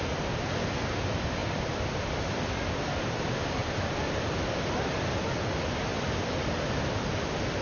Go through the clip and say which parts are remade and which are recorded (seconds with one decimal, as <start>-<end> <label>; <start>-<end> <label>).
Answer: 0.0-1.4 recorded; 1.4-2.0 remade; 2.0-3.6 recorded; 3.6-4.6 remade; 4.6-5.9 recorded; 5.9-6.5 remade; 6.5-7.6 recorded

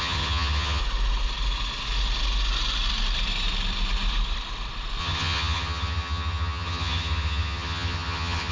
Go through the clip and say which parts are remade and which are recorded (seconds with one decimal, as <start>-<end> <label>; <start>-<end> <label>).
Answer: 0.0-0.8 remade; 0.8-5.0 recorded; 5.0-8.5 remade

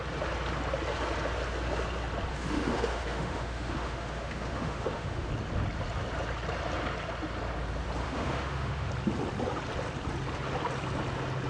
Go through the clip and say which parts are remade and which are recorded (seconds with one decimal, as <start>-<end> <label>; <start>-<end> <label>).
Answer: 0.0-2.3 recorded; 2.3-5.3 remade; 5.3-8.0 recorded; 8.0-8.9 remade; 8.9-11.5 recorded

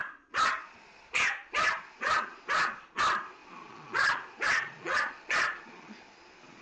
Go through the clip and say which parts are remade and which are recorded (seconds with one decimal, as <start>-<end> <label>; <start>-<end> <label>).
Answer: 0.0-3.0 remade; 3.0-3.4 recorded; 3.4-6.6 remade